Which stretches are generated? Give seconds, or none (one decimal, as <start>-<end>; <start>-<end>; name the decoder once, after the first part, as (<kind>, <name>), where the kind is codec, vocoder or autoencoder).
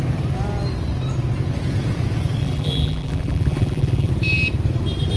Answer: 2.4-4.1 (vocoder, BigVGAN v2)